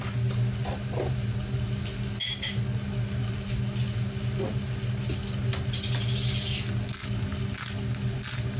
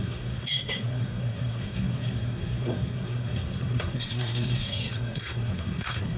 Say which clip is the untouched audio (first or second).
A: first